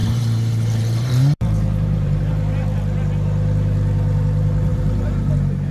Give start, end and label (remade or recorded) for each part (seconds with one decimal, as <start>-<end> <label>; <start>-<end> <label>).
0.0-2.2 remade; 2.2-4.7 recorded; 4.7-5.3 remade; 5.3-5.7 recorded

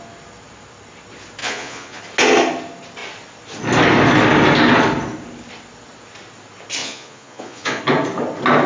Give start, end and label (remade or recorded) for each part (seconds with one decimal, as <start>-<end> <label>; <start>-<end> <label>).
0.0-1.4 recorded; 1.4-2.0 remade; 2.0-6.8 recorded; 6.8-7.8 remade; 7.8-8.7 recorded

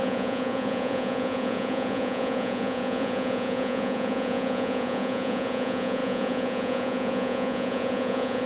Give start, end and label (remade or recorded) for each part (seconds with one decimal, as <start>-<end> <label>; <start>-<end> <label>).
0.0-8.5 remade

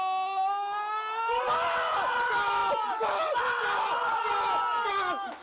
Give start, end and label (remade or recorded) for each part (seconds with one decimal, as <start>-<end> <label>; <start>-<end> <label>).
0.0-5.4 recorded

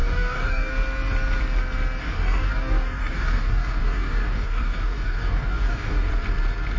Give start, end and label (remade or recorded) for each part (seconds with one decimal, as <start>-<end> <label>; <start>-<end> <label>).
0.0-0.7 remade; 0.7-2.0 recorded; 2.0-6.1 remade; 6.1-6.8 recorded

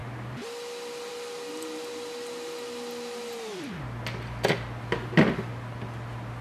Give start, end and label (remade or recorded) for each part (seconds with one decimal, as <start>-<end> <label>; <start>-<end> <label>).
0.0-6.4 recorded

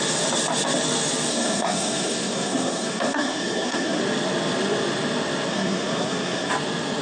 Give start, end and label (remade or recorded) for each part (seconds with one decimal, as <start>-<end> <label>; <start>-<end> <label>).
0.0-1.3 recorded; 1.3-4.0 remade; 4.0-5.5 recorded; 5.5-6.5 remade; 6.5-7.0 recorded

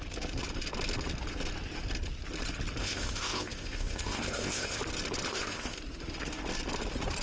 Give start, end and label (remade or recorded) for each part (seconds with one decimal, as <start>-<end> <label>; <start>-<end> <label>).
0.0-2.8 recorded; 2.8-4.8 remade; 4.8-5.3 recorded; 5.3-5.8 remade; 5.8-7.2 recorded